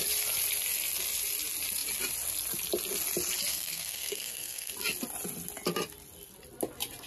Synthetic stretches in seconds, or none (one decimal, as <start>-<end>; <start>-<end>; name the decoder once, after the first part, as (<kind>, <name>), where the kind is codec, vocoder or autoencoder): 3.5-4.7 (codec, SNAC)